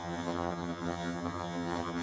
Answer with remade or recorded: remade